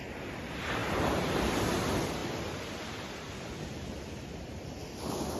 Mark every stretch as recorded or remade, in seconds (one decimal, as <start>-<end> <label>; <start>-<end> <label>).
0.0-5.4 recorded